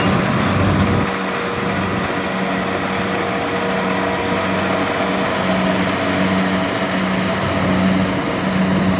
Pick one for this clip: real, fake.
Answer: real